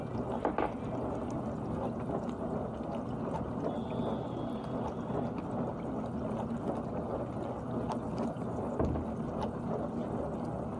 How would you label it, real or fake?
real